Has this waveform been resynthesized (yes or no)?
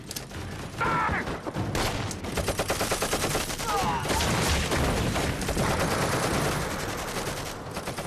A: no